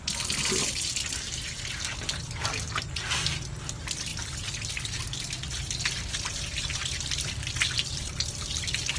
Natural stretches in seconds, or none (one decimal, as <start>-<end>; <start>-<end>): 0.0-9.0